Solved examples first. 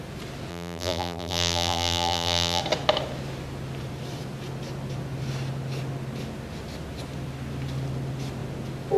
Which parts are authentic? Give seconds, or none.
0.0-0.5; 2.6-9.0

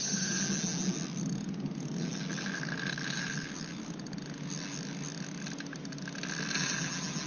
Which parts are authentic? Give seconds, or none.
0.0-7.3

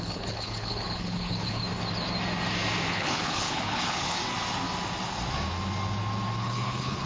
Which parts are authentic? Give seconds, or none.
1.6-2.9; 4.2-6.4

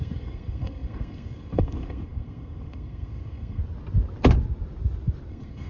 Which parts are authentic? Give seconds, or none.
3.6-5.3

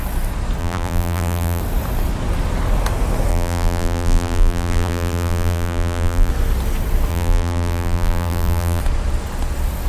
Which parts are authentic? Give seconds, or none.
0.0-0.6; 1.6-3.3; 6.3-7.1; 8.8-9.9

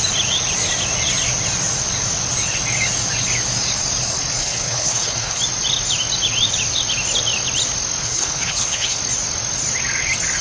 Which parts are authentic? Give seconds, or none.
0.0-4.4; 5.4-8.0; 9.0-10.4

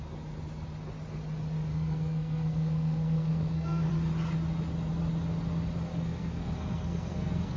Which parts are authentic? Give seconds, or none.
0.0-1.7; 3.9-5.9

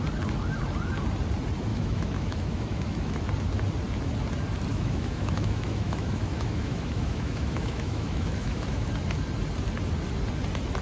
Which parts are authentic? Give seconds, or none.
0.0-1.7; 3.2-4.7; 8.9-10.8